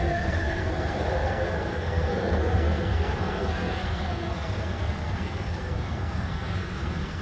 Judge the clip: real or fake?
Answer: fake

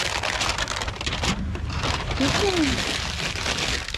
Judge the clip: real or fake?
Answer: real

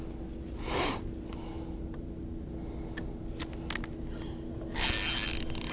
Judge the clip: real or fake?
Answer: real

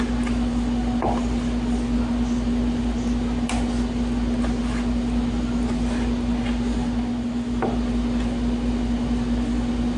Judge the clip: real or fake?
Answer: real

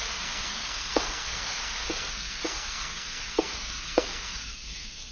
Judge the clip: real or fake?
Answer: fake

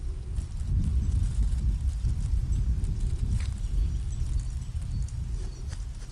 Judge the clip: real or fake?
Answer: real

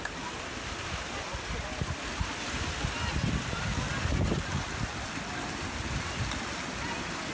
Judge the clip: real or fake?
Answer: real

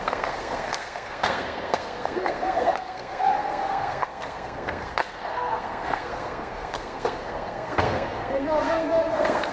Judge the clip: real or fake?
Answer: fake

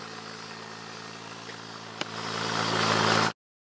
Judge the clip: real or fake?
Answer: real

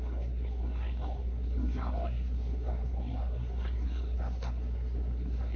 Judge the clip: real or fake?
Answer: fake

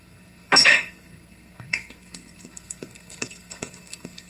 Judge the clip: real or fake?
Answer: fake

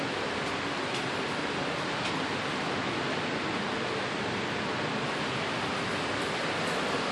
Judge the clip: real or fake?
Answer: real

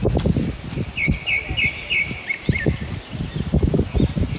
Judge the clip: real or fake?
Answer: real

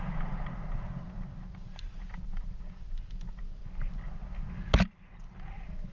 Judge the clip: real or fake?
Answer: real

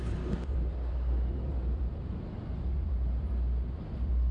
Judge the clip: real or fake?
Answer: real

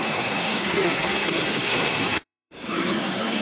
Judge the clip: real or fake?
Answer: fake